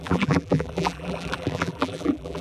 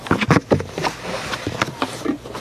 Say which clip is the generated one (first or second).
first